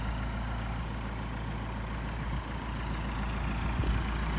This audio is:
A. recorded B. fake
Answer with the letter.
A